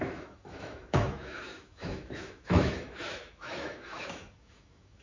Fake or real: fake